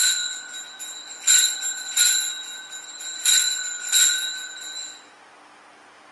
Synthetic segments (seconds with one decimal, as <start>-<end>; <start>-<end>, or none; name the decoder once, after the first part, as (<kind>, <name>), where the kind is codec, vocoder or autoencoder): none